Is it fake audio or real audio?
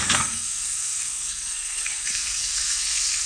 fake